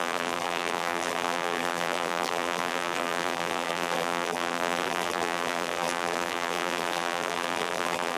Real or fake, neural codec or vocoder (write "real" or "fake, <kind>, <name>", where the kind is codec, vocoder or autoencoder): fake, vocoder, BigVGAN v2